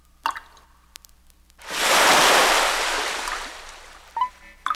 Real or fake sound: real